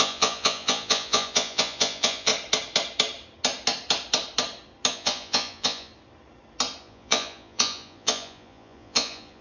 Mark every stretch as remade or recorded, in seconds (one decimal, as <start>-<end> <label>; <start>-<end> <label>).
0.0-2.3 remade; 2.3-4.9 recorded; 4.9-5.9 remade; 5.9-6.8 recorded; 6.8-9.4 remade